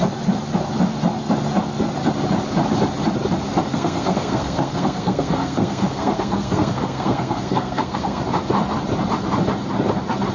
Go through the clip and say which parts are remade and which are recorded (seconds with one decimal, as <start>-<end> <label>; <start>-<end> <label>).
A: 0.0-3.7 recorded; 3.7-8.2 remade; 8.2-10.3 recorded

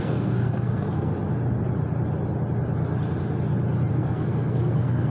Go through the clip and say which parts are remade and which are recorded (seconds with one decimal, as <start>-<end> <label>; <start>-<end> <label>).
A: 0.0-1.1 remade; 1.1-3.9 recorded; 3.9-5.1 remade

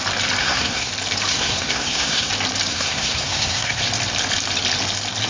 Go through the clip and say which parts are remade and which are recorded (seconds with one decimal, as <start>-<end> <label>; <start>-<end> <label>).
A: 0.0-0.4 recorded; 0.4-0.9 remade; 0.9-1.3 recorded; 1.3-2.3 remade; 2.3-2.7 recorded; 2.7-3.8 remade; 3.8-5.3 recorded

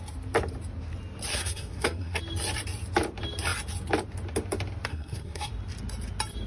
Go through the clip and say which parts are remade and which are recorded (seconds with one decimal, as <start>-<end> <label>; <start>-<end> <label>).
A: 0.0-1.3 recorded; 1.3-2.2 remade; 2.2-4.9 recorded; 4.9-5.5 remade; 5.5-6.5 recorded

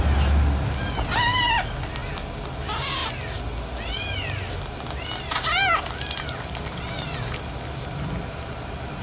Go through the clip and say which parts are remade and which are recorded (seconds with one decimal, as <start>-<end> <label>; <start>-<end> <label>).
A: 0.0-9.0 recorded

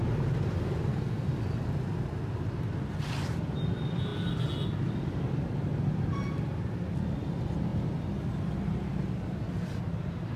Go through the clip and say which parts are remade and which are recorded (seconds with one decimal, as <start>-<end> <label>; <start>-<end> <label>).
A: 0.0-0.9 recorded; 0.9-1.4 remade; 1.4-10.4 recorded

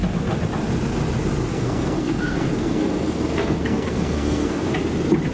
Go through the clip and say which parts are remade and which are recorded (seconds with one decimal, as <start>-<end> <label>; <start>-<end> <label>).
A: 0.0-1.5 recorded; 1.5-4.7 remade; 4.7-5.3 recorded